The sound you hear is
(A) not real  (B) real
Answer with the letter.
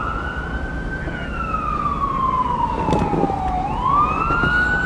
B